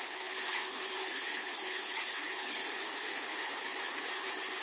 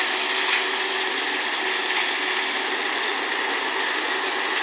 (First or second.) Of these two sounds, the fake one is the first